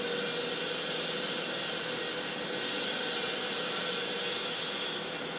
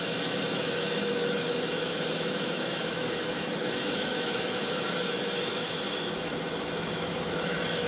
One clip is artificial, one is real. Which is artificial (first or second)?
second